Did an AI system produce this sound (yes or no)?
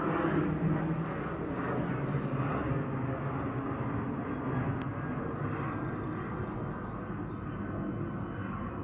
no